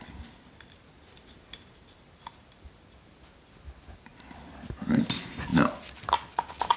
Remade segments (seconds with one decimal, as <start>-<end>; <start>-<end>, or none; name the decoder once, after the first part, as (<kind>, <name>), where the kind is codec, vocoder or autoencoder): none